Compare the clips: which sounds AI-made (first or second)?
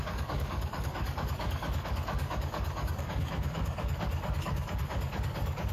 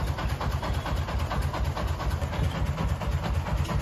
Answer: first